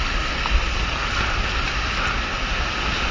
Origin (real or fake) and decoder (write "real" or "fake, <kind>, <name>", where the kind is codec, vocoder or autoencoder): real